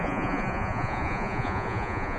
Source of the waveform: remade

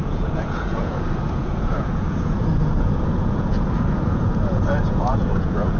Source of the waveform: remade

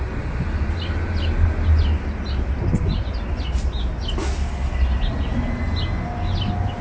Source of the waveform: recorded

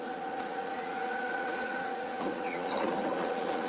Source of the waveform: remade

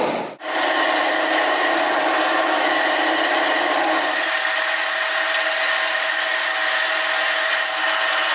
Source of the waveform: recorded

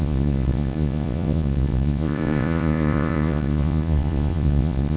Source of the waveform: remade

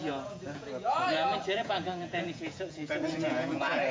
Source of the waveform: remade